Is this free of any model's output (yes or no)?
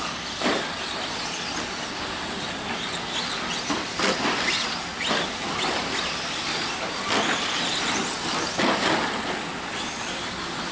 yes